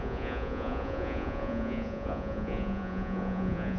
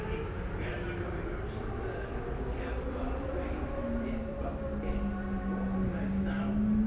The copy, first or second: first